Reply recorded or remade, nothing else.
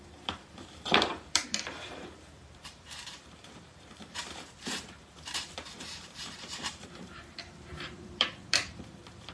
remade